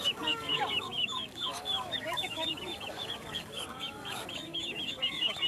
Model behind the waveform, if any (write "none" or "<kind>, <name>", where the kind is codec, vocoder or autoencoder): codec, DAC